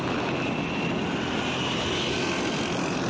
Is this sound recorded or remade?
recorded